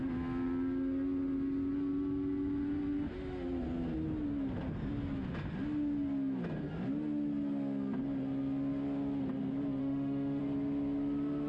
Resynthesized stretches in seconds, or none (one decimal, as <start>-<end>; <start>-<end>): 9.8-10.4